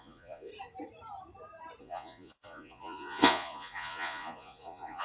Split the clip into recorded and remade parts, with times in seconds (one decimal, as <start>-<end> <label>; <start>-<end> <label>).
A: 0.0-0.5 remade; 0.5-1.8 recorded; 1.8-5.0 remade